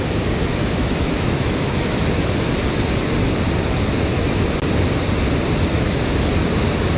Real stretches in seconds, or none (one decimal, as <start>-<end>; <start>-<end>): 0.0-0.5; 2.0-7.0